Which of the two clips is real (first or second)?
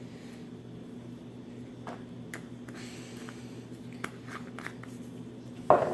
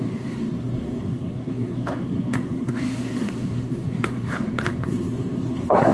first